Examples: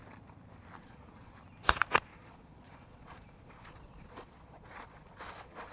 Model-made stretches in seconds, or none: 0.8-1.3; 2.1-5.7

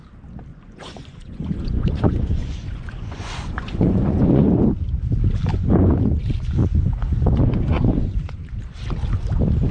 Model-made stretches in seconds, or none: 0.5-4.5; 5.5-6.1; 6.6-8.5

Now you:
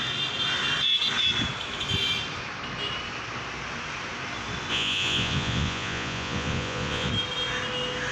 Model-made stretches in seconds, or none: 4.7-7.1

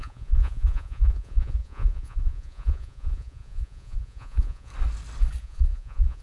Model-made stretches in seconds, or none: 0.0-4.7; 5.4-6.2